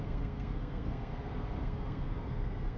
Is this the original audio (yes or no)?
no